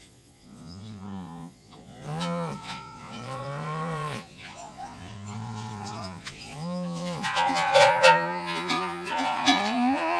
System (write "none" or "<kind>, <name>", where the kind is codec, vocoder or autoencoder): vocoder, Vocos